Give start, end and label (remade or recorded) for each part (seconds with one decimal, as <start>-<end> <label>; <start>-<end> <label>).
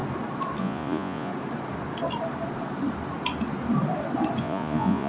0.0-0.6 recorded; 0.6-1.3 remade; 1.3-4.4 recorded; 4.4-5.1 remade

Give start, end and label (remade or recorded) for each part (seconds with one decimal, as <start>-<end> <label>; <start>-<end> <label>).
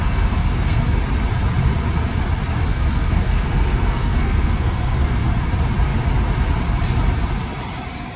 0.0-0.8 remade; 0.8-2.7 recorded; 2.7-5.5 remade; 5.5-8.2 recorded